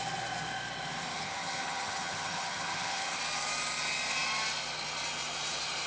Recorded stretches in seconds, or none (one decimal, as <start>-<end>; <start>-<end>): 0.0-1.1; 3.2-5.9